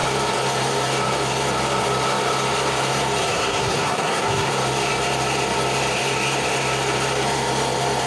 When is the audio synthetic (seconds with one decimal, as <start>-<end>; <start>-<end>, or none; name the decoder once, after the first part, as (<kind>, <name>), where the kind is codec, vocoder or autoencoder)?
3.2-4.5 (codec, SNAC)